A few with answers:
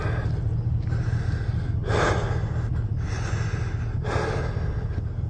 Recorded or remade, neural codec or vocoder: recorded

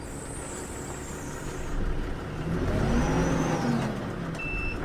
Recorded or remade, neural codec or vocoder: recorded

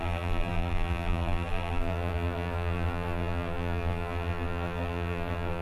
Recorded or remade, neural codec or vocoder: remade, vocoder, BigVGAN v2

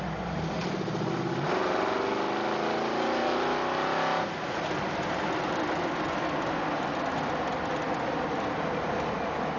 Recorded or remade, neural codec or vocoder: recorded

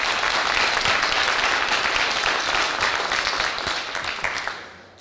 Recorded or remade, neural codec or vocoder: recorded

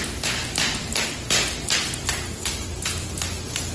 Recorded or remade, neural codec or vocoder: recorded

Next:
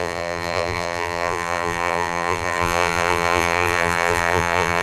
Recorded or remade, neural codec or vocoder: remade, vocoder, BigVGAN v2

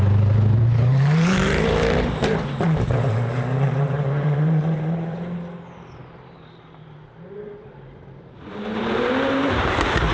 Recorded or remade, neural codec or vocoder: remade, vocoder, BigVGAN v2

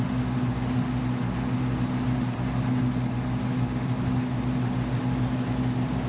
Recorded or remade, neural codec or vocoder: recorded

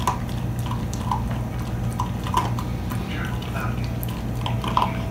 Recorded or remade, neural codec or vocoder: recorded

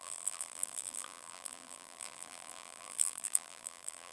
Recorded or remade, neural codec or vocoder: remade, vocoder, BigVGAN v2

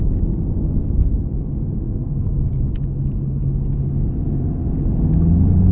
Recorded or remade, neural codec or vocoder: recorded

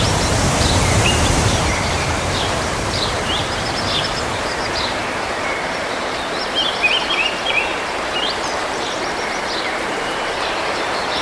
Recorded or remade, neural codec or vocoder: remade, vocoder, BigVGAN v2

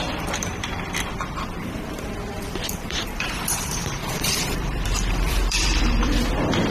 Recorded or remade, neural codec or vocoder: remade, vocoder, BigVGAN v2